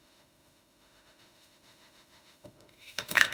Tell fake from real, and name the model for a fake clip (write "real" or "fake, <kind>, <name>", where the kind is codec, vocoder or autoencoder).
fake, autoencoder, DAC-VAE